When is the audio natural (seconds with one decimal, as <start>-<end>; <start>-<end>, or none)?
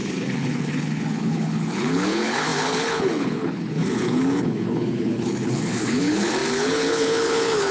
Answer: none